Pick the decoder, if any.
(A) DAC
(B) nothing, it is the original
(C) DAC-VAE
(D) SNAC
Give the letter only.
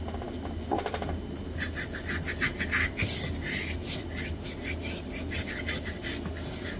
B